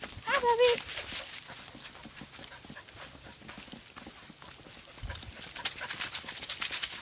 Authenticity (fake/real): real